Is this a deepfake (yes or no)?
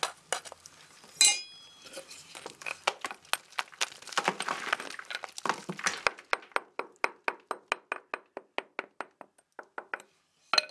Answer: no